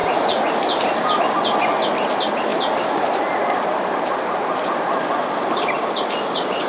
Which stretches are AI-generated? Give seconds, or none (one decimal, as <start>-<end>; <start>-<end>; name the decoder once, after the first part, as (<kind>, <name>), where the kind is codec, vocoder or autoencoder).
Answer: 0.0-1.2 (vocoder, BigVGAN v2); 2.5-6.7